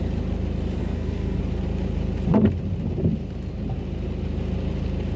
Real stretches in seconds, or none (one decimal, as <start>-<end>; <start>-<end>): 0.0-0.8; 1.4-5.2